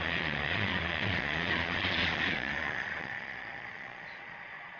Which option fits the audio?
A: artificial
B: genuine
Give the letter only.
A